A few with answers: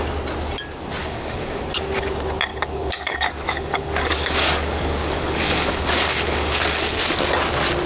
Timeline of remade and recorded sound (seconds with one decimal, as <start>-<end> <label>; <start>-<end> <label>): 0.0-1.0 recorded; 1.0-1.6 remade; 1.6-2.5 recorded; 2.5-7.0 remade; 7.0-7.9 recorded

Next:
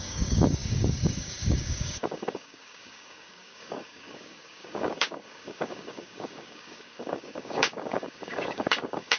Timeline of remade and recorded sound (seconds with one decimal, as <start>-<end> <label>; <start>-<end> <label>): 0.0-9.2 remade

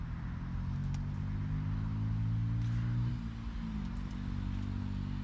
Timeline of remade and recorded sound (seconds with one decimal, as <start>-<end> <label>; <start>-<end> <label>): 0.0-5.2 recorded

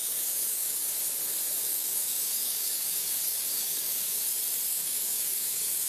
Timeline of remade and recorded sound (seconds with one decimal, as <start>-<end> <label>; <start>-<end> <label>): 0.0-0.9 remade; 0.9-1.6 recorded; 1.6-4.2 remade; 4.2-4.7 recorded; 4.7-5.9 remade

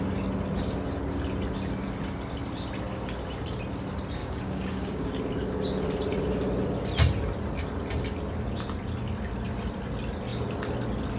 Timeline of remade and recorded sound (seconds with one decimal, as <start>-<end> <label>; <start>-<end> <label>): 0.0-4.2 recorded; 4.2-5.1 remade; 5.1-11.2 recorded